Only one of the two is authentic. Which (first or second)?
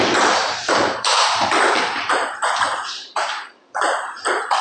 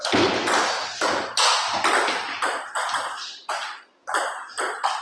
second